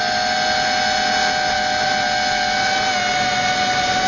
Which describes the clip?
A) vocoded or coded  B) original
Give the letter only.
B